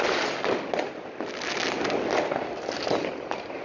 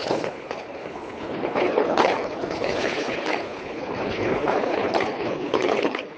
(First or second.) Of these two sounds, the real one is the first